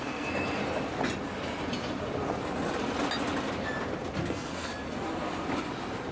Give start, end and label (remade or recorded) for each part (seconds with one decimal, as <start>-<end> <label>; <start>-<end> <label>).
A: 0.0-0.6 remade; 0.6-4.3 recorded; 4.3-4.7 remade; 4.7-6.1 recorded